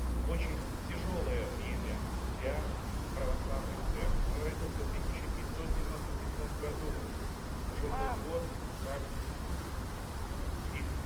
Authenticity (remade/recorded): recorded